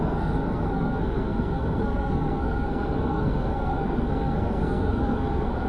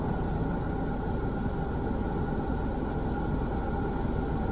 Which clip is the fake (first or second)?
first